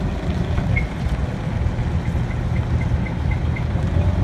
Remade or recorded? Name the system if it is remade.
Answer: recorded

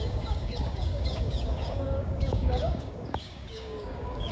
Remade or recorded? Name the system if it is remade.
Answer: remade, codec, DAC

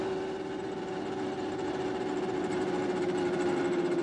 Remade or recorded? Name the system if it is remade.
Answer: recorded